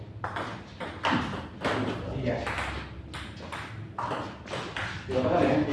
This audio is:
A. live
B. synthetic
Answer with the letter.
A